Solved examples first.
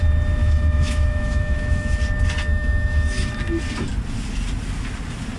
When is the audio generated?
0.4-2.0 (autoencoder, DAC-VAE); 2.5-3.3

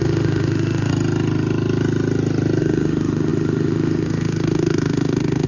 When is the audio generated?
0.0-0.9 (autoencoder, DAC-VAE); 2.6-5.5

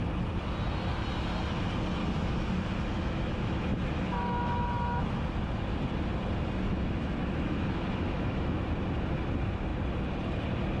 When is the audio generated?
2.0-5.2 (autoencoder, DAC-VAE); 6.7-8.7